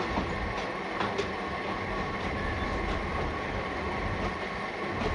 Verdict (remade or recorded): recorded